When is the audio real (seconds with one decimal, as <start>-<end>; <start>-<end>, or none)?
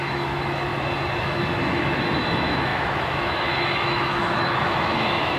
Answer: 0.7-1.2